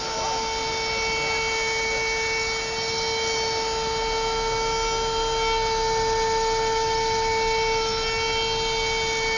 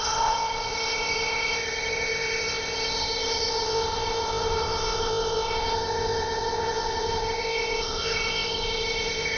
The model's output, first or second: second